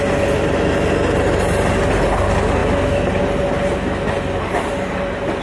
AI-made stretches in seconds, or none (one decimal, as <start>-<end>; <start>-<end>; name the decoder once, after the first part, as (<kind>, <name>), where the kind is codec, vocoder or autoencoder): none